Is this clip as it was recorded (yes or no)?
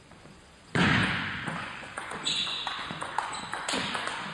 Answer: no